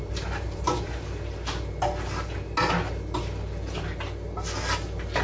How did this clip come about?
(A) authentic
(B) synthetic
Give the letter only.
A